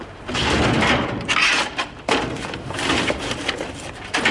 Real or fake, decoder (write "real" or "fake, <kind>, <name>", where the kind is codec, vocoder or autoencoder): real